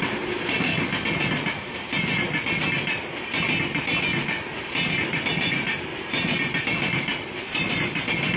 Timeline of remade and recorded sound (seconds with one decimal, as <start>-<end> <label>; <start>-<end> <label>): 0.0-0.7 remade; 0.7-4.9 recorded; 4.9-8.4 remade